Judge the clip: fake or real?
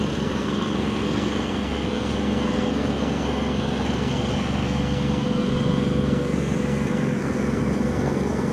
fake